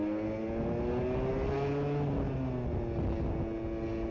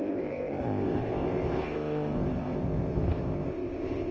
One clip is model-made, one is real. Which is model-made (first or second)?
second